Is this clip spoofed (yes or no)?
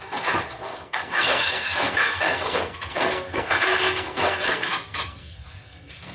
yes